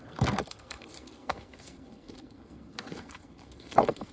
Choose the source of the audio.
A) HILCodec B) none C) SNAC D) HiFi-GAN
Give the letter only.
C